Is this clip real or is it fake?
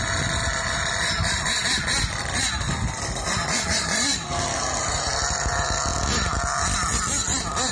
real